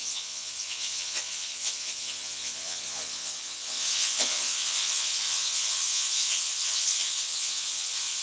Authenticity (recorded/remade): remade